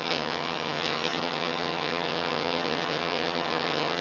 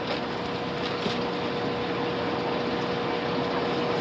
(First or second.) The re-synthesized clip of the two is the first